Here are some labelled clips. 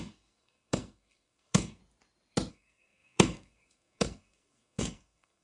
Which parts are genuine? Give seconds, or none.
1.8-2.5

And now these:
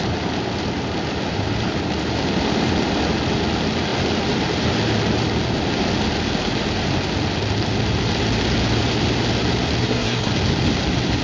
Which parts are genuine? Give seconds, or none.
0.0-9.8; 10.3-11.2

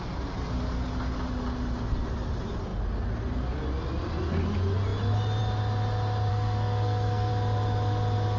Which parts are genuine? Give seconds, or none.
0.0-6.3; 7.3-8.4

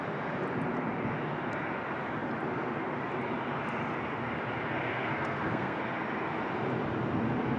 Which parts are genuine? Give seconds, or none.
0.0-4.8; 5.8-7.6

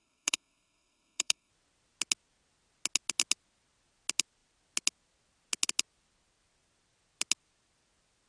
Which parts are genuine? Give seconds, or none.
1.5-8.3

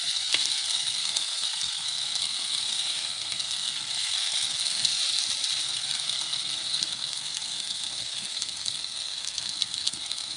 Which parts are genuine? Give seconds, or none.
5.0-5.6

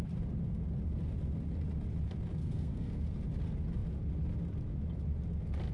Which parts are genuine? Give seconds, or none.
0.0-2.4; 3.0-5.7

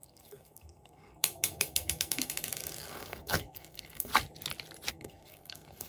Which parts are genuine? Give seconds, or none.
4.1-4.9